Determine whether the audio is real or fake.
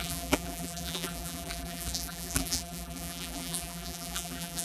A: fake